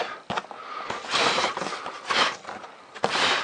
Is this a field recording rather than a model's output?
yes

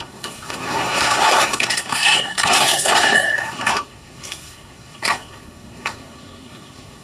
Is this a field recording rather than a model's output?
no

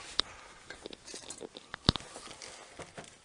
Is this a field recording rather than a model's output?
yes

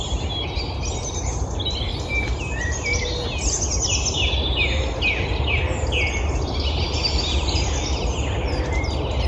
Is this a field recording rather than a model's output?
yes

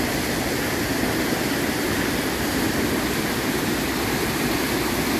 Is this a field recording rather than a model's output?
yes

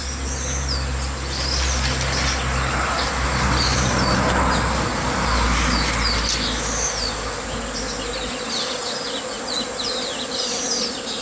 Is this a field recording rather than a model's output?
yes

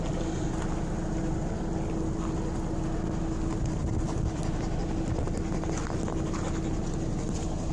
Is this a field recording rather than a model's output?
yes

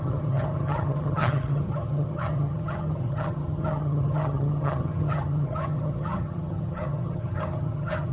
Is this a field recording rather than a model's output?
no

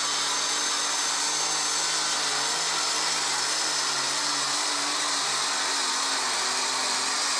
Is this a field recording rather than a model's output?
yes